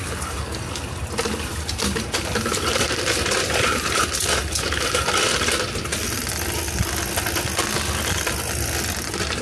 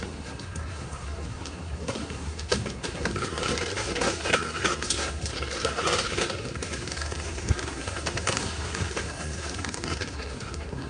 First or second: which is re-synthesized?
second